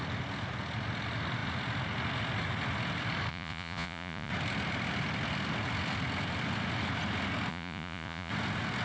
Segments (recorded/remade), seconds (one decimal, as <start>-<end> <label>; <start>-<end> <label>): 0.0-3.3 recorded; 3.3-4.3 remade; 4.3-7.5 recorded; 7.5-8.3 remade; 8.3-8.8 recorded